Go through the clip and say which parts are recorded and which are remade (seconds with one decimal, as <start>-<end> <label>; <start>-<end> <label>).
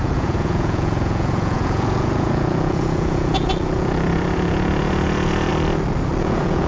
0.0-5.5 remade; 5.5-6.2 recorded; 6.2-6.7 remade